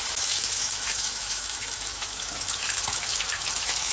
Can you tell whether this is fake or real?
fake